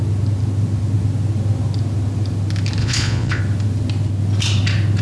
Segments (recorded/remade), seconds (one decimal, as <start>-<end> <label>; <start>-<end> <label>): 0.0-2.8 recorded; 2.8-3.4 remade; 3.4-5.0 recorded